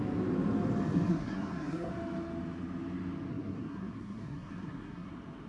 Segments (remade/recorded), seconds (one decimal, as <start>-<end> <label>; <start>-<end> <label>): 0.0-1.1 recorded; 1.1-1.9 remade; 1.9-3.3 recorded; 3.3-5.1 remade; 5.1-5.5 recorded